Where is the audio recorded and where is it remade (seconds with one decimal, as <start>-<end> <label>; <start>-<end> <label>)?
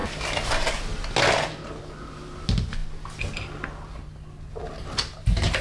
0.0-5.6 recorded